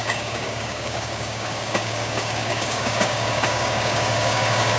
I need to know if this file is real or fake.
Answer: fake